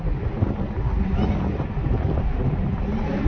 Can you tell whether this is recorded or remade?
recorded